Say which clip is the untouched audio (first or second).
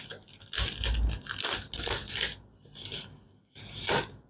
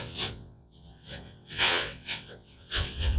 first